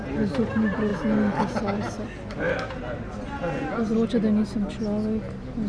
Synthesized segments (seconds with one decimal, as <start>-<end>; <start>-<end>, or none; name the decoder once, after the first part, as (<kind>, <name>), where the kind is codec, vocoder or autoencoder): none